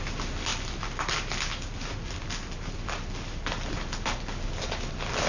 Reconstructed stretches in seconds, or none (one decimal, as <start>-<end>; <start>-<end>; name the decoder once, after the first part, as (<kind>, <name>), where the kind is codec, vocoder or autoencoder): none